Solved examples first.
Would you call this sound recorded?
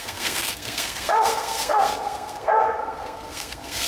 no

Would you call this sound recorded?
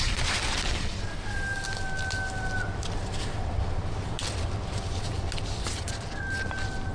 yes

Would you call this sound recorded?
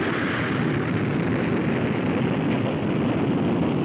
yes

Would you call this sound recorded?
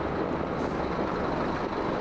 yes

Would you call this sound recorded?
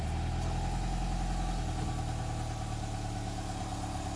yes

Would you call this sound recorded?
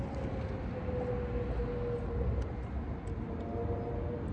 yes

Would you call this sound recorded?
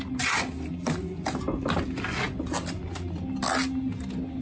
yes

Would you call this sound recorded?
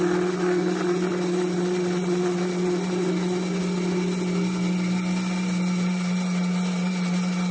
yes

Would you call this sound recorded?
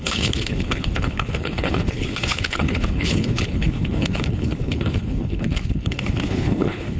no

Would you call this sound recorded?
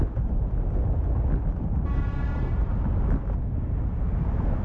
yes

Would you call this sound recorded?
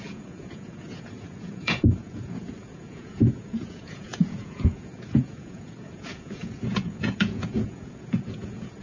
no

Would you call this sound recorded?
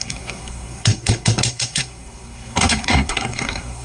no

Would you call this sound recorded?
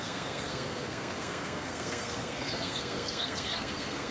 no